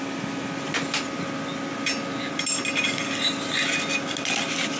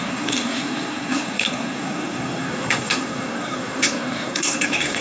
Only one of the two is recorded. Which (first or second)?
first